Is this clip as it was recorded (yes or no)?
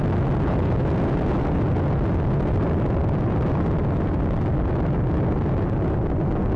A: yes